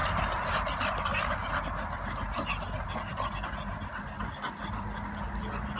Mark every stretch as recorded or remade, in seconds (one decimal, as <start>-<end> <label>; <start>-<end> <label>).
0.0-5.8 recorded